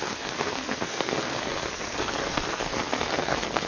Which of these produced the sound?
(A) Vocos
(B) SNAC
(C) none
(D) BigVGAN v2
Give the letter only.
B